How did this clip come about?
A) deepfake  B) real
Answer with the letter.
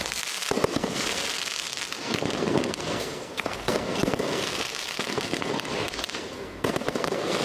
A